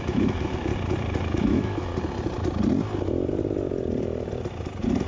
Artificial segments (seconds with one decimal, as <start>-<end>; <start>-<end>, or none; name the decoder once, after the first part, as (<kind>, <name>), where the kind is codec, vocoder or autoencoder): 0.0-0.7 (autoencoder, DAC-VAE); 1.2-1.9